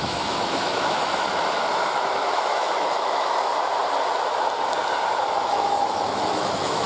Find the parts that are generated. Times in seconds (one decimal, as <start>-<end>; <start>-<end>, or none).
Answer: 0.0-3.5; 5.3-6.9